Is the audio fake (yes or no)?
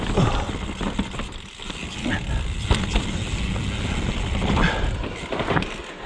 no